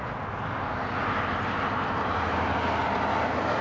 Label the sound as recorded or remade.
recorded